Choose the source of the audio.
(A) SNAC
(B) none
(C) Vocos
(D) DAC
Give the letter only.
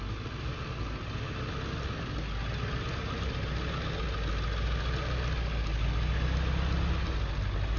B